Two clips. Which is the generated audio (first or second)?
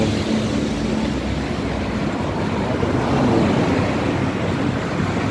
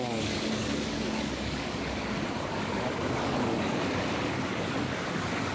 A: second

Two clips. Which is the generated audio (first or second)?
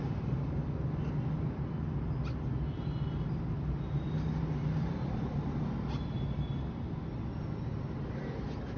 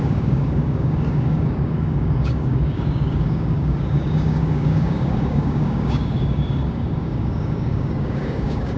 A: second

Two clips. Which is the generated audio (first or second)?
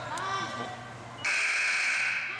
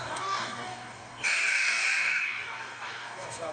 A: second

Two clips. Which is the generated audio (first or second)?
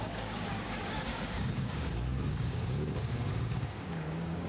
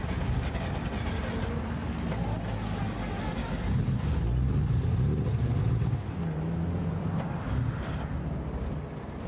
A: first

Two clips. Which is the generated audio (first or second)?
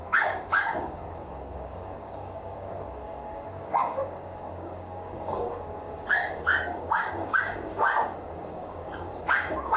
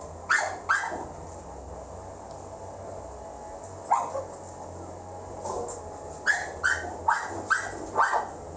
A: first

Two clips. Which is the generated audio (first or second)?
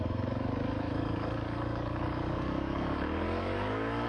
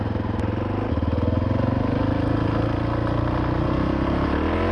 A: first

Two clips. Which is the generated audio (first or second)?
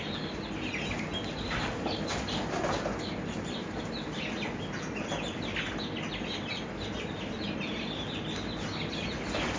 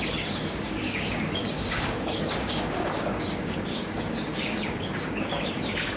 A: second